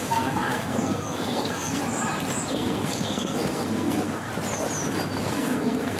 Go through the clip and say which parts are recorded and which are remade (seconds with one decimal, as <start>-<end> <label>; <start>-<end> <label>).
0.0-1.8 remade; 1.8-2.5 recorded; 2.5-4.3 remade; 4.3-5.2 recorded; 5.2-6.0 remade